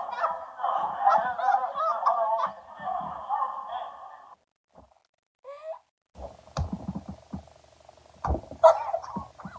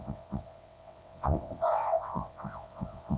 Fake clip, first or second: second